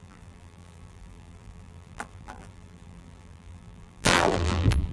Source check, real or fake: fake